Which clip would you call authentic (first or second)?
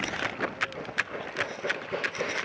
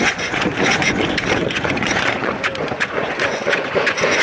first